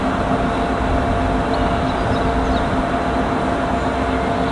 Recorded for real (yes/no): yes